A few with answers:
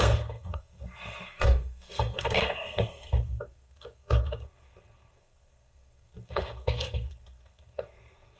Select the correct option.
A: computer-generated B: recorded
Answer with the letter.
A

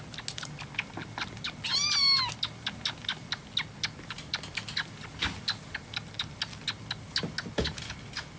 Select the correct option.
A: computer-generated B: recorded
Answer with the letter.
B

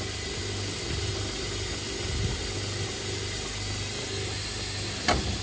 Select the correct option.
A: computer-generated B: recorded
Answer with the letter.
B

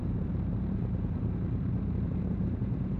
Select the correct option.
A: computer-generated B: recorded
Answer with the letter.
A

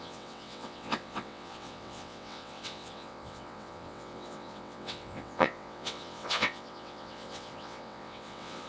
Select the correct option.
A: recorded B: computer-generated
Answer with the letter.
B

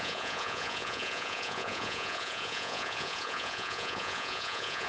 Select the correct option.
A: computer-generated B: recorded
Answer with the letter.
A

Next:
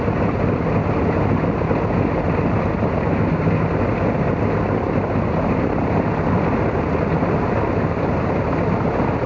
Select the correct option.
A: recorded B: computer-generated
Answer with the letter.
A